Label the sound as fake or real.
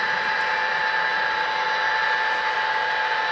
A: real